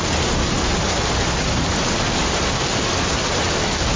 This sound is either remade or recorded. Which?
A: recorded